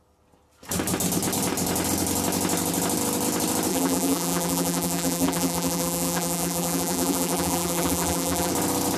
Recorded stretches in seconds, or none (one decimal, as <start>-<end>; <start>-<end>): 0.0-3.7; 8.5-9.0